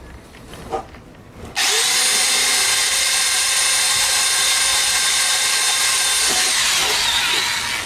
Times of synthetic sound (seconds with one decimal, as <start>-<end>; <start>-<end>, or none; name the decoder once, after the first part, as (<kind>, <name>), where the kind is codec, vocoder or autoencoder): 2.8-3.6 (vocoder, BigVGAN v2); 4.7-6.1